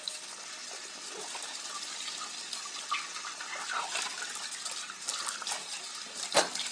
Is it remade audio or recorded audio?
recorded